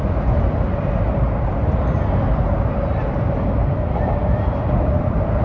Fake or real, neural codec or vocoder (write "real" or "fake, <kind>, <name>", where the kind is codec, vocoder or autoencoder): real